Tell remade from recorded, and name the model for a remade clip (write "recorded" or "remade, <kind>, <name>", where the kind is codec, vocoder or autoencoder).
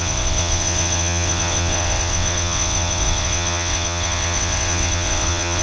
remade, vocoder, WaveNeXt